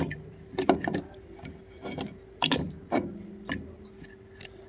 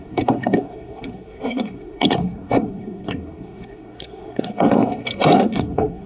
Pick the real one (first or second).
first